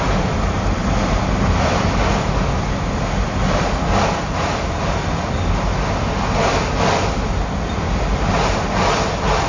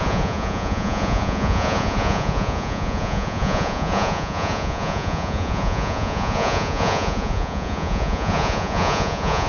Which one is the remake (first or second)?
second